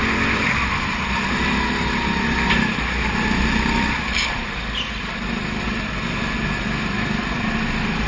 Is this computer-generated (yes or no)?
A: no